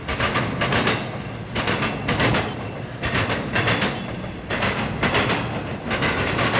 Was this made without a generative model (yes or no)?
yes